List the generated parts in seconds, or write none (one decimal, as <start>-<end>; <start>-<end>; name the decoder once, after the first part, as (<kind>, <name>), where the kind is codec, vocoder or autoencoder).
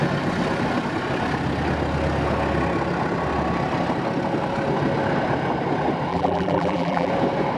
6.1-7.1 (vocoder, BigVGAN v2)